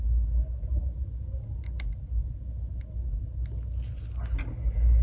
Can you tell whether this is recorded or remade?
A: recorded